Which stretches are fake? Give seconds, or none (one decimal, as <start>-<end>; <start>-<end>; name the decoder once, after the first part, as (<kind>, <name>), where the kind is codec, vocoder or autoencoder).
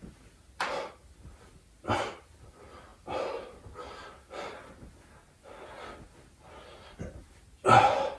none